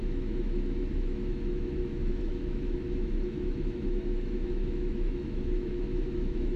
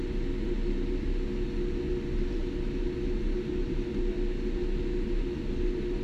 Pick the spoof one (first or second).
first